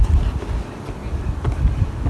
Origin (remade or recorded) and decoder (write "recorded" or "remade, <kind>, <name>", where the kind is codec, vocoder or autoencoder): recorded